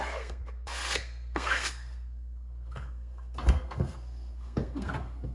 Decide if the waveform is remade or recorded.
remade